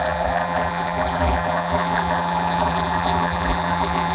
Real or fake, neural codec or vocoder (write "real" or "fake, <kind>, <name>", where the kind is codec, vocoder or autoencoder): fake, vocoder, BigVGAN v2